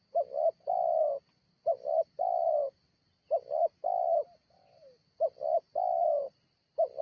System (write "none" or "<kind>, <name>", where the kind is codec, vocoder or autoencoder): none